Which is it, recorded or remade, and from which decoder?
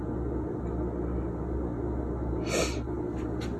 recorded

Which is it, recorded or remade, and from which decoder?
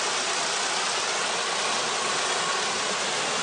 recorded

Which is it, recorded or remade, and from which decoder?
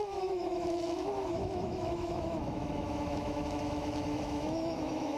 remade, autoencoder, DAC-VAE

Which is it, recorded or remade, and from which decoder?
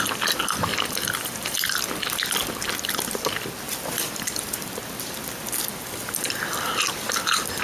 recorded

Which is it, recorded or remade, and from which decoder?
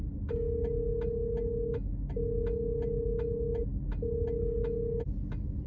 recorded